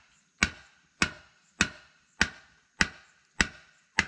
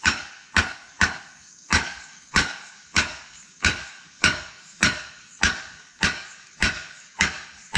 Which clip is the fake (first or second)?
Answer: second